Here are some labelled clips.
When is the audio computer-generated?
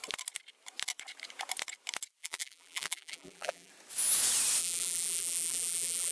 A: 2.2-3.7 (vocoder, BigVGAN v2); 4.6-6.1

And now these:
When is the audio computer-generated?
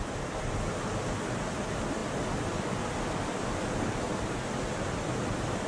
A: none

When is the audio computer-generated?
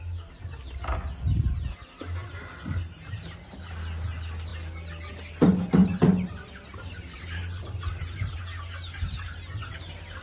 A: 5.8-8.4 (vocoder, BigVGAN v2)